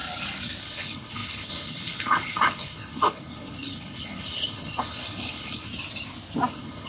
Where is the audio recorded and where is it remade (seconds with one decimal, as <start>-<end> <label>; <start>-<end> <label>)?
0.0-0.6 recorded; 0.6-5.7 remade; 5.7-6.5 recorded; 6.5-6.9 remade